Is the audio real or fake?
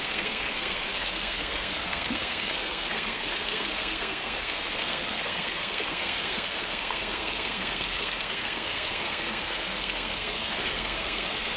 fake